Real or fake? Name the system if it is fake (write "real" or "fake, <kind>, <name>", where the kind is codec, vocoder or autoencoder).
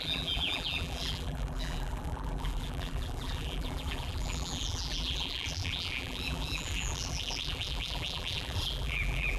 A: fake, vocoder, BigVGAN v2